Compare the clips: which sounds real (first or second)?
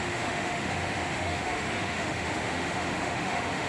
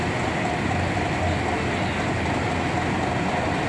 second